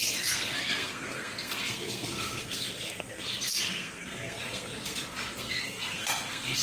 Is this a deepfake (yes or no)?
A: yes